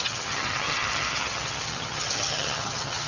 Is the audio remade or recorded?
remade